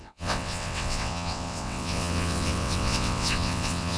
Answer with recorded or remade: remade